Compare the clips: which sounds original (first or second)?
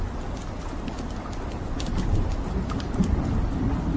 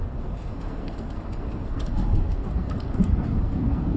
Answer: first